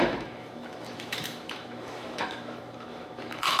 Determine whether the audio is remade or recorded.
remade